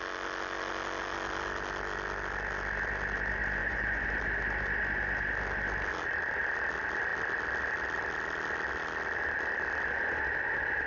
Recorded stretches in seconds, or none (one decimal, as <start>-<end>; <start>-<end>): 0.0-3.6; 4.1-10.9